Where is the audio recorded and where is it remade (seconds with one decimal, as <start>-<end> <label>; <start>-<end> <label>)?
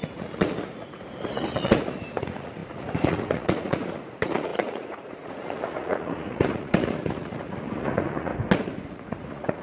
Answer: 0.0-8.3 remade; 8.3-8.9 recorded; 8.9-9.6 remade